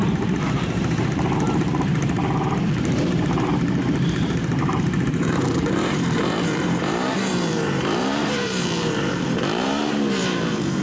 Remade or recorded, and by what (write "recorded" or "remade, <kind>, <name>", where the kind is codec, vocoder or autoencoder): remade, vocoder, BigVGAN v2